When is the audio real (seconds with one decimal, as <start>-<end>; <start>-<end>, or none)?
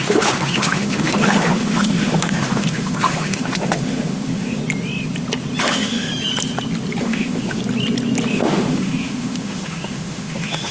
4.6-5.6; 6.1-7.0; 7.6-8.3